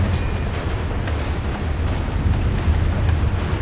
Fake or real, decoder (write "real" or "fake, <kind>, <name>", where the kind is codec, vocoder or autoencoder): real